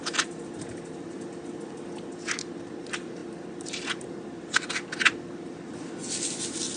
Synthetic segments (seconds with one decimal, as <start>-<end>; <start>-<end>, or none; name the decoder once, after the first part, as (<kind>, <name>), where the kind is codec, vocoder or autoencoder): none